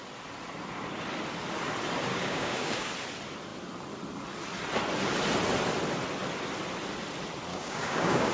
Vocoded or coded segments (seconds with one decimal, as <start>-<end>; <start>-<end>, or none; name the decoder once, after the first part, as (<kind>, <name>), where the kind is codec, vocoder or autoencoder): 2.1-2.9 (codec, DAC); 7.5-8.3